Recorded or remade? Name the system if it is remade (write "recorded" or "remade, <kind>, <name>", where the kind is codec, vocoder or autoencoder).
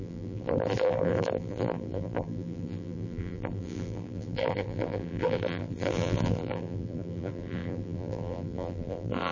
remade, vocoder, BigVGAN v2